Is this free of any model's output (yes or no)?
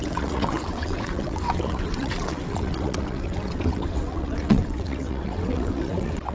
no